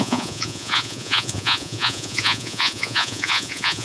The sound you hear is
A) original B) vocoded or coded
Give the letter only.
B